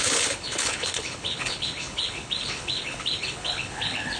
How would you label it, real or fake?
fake